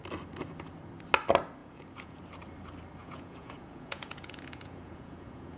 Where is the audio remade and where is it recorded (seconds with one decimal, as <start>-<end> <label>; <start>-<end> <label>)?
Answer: 0.0-1.6 recorded; 1.6-2.2 remade; 2.2-3.0 recorded; 3.0-5.6 remade